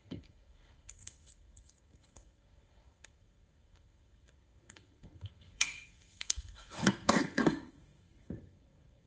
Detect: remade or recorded remade